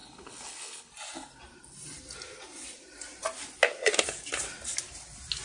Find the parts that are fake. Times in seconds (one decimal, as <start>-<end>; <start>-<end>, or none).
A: 0.0-0.9